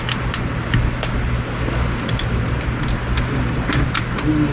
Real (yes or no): yes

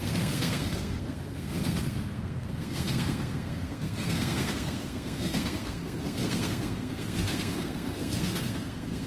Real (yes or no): no